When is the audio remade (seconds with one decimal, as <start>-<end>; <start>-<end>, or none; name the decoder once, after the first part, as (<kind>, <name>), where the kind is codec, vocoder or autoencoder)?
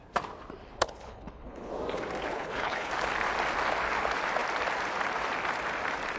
0.6-1.7 (codec, HILCodec); 2.3-2.9